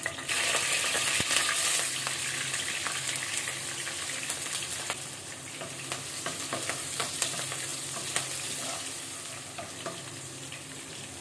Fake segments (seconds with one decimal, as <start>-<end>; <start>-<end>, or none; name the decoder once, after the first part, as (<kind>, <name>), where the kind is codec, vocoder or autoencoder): none